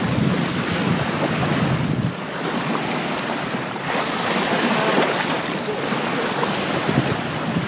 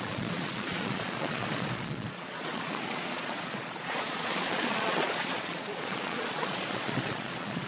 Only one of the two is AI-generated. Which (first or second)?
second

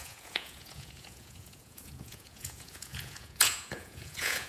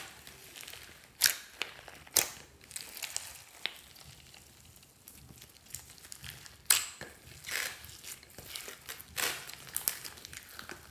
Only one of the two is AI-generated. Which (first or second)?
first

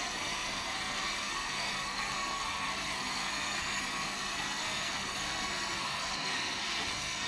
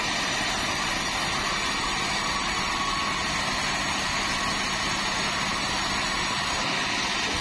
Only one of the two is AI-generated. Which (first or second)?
first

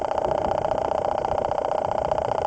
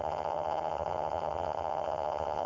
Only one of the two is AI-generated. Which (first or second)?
second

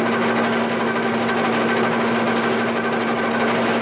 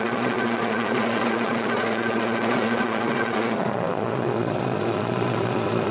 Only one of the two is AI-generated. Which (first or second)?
second